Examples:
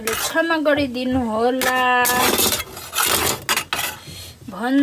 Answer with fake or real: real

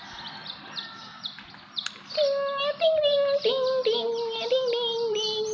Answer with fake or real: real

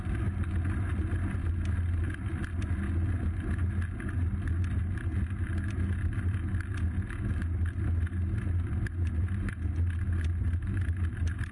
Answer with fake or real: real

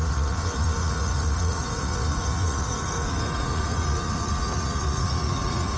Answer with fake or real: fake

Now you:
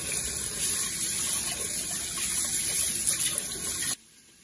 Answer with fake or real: real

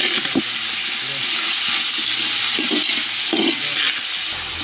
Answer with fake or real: real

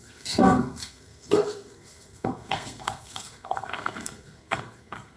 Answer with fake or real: fake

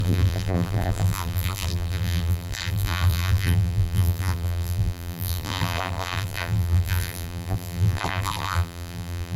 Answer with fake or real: fake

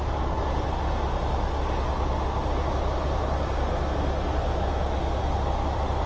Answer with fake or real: real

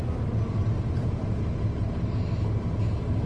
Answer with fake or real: real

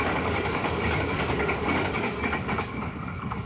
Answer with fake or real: fake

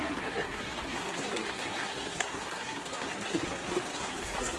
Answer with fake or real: fake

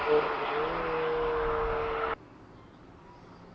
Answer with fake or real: real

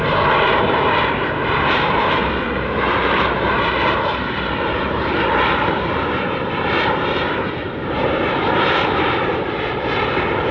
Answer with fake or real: fake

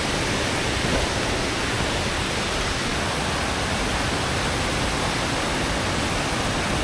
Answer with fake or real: real